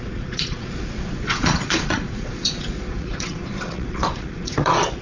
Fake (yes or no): yes